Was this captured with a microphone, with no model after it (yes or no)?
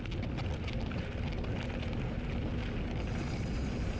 yes